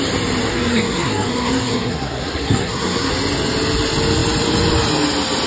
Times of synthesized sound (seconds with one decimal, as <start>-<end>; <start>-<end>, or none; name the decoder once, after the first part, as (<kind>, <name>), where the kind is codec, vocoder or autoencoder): 0.5-3.1 (codec, SNAC)